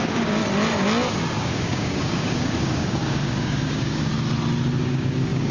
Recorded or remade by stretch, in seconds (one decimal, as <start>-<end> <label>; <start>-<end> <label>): 0.0-0.4 remade; 0.4-1.4 recorded; 1.4-4.1 remade; 4.1-4.8 recorded; 4.8-5.5 remade

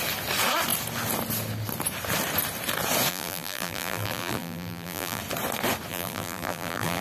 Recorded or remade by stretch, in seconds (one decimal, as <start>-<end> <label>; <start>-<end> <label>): 0.0-3.1 recorded; 3.1-5.2 remade; 5.2-5.9 recorded; 5.9-7.0 remade

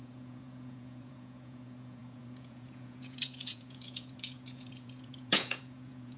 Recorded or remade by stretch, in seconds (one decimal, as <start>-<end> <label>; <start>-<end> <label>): 0.0-6.2 remade